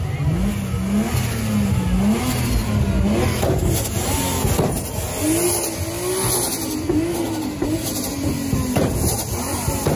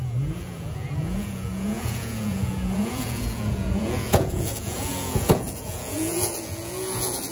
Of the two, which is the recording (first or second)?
first